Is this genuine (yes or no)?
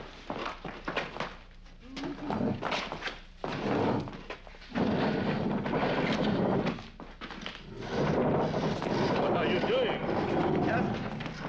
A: yes